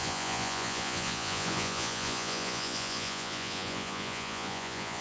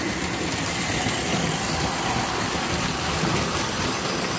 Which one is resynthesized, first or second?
first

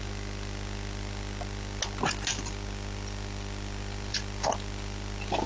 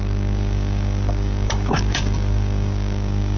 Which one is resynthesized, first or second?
second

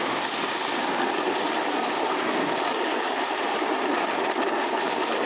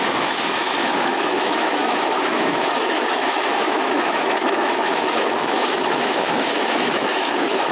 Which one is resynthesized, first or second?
second